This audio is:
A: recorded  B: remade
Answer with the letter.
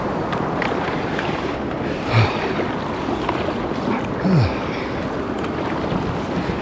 A